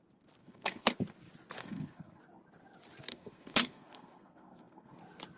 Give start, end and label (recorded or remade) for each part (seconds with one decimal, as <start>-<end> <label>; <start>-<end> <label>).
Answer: 0.0-0.4 recorded; 0.4-0.9 remade; 0.9-1.6 recorded; 1.6-2.2 remade; 2.2-3.1 recorded; 3.1-5.0 remade; 5.0-5.4 recorded